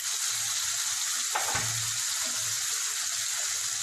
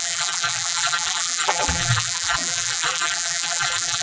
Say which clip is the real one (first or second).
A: first